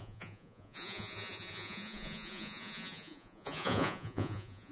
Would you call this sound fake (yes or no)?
yes